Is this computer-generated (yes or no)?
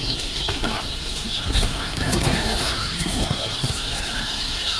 yes